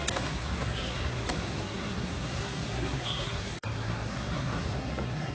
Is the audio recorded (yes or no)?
no